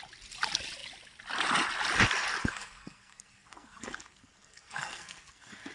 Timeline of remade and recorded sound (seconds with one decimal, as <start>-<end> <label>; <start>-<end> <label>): 0.0-2.4 recorded; 2.4-5.7 remade